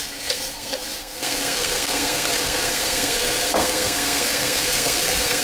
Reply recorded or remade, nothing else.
remade